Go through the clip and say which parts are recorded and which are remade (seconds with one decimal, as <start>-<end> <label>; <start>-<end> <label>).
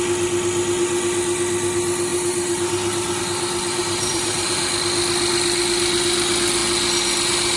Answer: 0.0-2.1 recorded; 2.1-3.2 remade; 3.2-3.8 recorded; 3.8-4.7 remade; 4.7-7.6 recorded